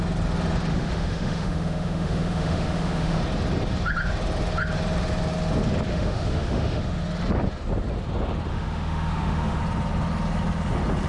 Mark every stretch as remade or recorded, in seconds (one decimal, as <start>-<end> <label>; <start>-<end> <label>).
0.0-0.7 recorded; 0.7-3.2 remade; 3.2-5.9 recorded; 5.9-7.0 remade; 7.0-8.5 recorded; 8.5-9.6 remade; 9.6-11.1 recorded